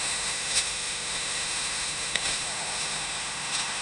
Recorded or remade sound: remade